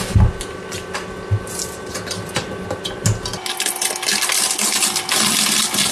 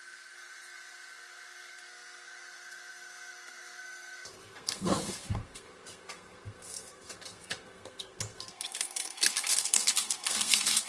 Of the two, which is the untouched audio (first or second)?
first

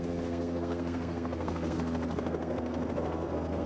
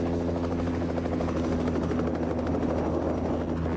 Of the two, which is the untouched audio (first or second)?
second